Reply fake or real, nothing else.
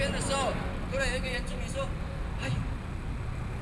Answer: real